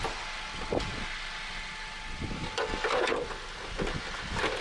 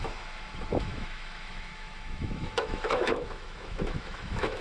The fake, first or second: second